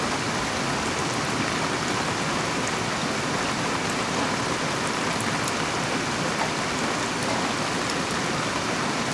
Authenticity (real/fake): real